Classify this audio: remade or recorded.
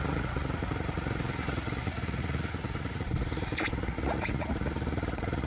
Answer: remade